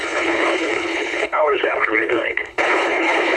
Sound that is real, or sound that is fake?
fake